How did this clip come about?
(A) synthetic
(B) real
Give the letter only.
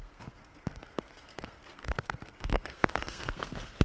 A